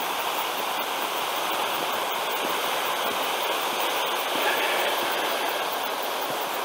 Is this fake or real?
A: real